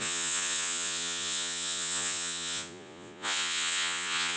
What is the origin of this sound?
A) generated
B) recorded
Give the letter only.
A